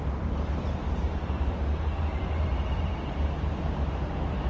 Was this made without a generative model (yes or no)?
no